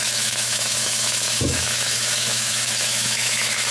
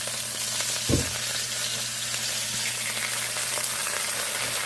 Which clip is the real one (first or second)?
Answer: second